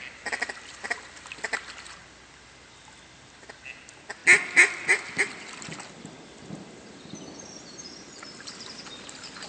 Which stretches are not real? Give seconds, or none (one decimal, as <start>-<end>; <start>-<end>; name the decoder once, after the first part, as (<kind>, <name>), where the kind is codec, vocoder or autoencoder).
none